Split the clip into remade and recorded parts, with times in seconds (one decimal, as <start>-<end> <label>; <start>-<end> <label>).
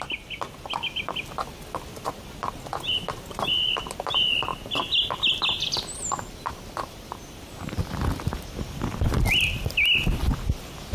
0.0-10.9 recorded